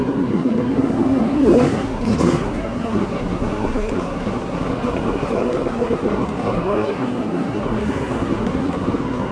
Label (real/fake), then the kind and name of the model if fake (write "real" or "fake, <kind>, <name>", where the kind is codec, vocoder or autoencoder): fake, codec, SNAC